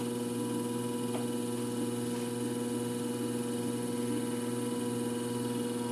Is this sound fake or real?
real